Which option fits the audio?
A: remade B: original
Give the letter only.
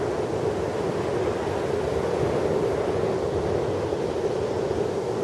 B